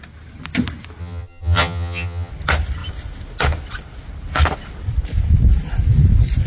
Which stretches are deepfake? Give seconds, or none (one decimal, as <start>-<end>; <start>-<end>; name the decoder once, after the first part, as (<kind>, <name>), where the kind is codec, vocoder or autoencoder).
1.0-2.3 (vocoder, HiFi-GAN)